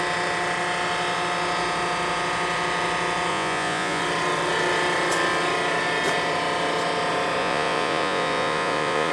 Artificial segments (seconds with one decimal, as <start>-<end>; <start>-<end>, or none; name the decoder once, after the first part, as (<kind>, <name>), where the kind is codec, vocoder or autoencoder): 3.3-4.0 (vocoder, Vocos); 7.4-9.1